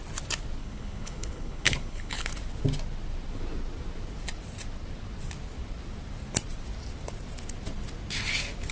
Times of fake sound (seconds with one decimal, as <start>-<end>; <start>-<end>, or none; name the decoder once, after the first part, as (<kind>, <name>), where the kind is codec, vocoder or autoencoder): 0.6-2.3 (codec, HILCodec)